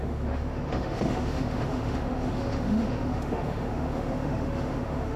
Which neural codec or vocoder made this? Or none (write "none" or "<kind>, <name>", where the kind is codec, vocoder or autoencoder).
autoencoder, DAC-VAE